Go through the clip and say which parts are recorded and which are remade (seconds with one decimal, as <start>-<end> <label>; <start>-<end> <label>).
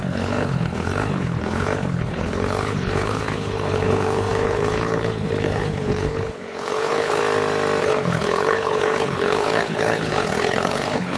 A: 0.0-7.2 remade; 7.2-7.8 recorded; 7.8-11.2 remade